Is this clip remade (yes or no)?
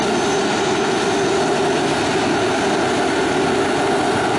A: no